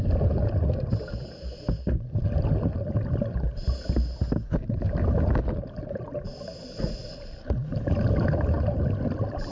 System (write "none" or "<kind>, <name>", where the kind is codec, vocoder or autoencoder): none